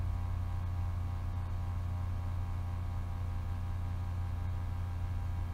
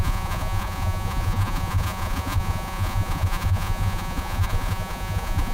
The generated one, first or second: second